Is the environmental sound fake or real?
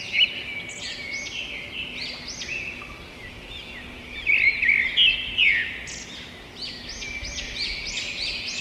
real